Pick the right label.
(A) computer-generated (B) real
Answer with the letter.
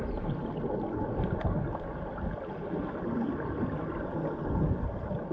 B